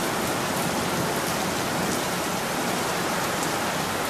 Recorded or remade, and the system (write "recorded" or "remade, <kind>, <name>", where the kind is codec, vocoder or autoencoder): recorded